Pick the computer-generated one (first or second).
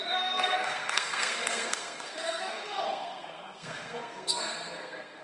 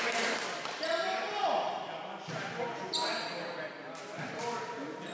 first